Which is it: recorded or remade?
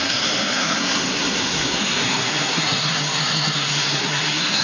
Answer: remade